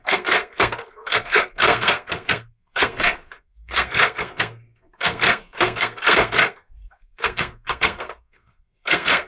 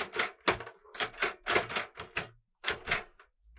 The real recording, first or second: second